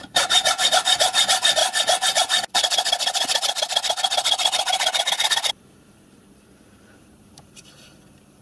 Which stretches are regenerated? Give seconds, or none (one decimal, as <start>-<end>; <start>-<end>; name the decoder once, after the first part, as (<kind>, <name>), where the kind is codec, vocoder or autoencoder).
0.0-1.6 (vocoder, BigVGAN v2); 5.5-8.4